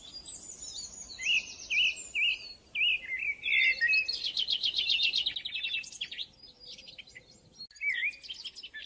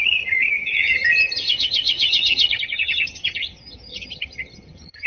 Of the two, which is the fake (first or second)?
second